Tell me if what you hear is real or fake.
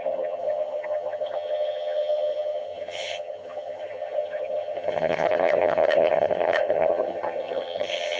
fake